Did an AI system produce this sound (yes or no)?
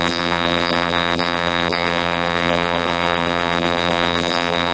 yes